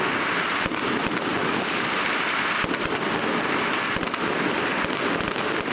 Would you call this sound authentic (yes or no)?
yes